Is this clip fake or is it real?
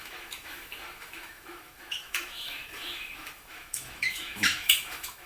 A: fake